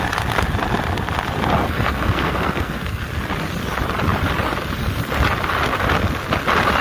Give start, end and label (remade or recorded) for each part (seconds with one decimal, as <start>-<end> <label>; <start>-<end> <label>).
0.0-1.6 recorded; 1.6-3.0 remade; 3.0-6.8 recorded

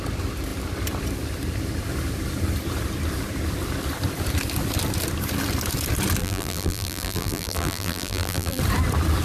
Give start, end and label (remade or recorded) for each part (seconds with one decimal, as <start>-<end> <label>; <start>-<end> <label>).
0.0-6.2 recorded; 6.2-8.6 remade; 8.6-9.2 recorded

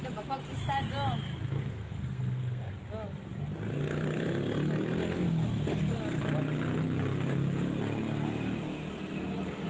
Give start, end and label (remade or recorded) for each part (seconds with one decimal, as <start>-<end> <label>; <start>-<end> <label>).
0.0-1.6 recorded; 1.6-2.7 remade; 2.7-9.7 recorded

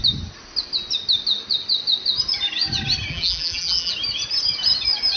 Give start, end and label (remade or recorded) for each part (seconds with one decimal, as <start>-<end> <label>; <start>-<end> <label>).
0.0-3.1 recorded; 3.1-3.9 remade; 3.9-5.2 recorded

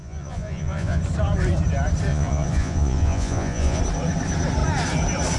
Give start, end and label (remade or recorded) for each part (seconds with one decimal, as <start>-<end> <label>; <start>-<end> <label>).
0.0-1.0 remade; 1.0-2.1 recorded; 2.1-3.8 remade; 3.8-5.4 recorded

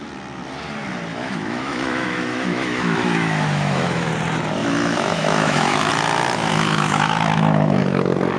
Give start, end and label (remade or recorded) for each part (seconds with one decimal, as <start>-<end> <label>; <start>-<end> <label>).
0.0-1.1 recorded; 1.1-4.1 remade; 4.1-4.6 recorded; 4.6-5.9 remade; 5.9-6.5 recorded; 6.5-7.8 remade; 7.8-8.4 recorded